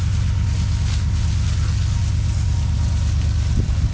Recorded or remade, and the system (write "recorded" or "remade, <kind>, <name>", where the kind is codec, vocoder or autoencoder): recorded